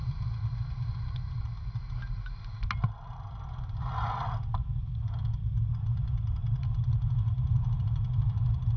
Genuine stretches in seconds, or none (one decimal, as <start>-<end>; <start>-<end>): 0.0-8.8